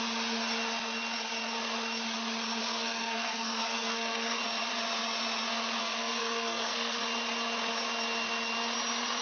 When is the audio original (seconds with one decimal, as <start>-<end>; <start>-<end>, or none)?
0.0-2.6; 4.4-5.8; 7.0-9.2